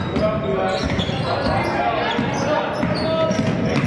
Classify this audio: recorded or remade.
recorded